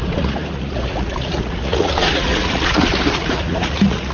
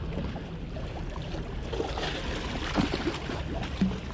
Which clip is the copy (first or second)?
first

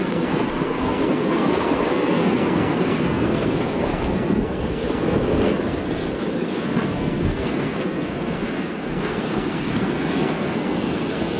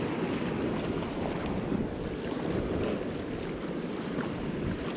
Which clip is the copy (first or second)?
first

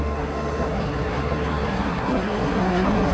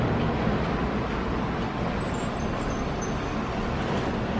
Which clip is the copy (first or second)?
first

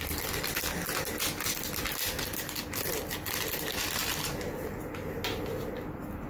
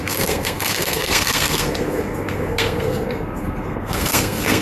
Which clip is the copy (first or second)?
second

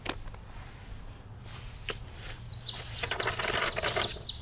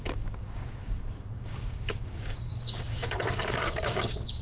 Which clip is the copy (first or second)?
second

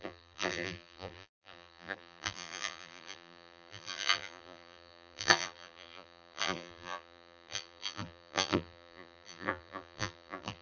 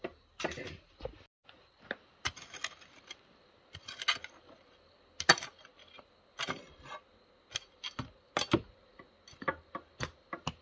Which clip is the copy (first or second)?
first